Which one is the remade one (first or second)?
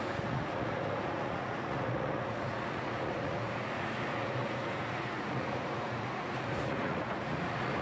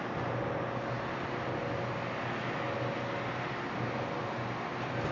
first